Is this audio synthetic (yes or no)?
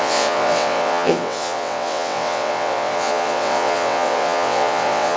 yes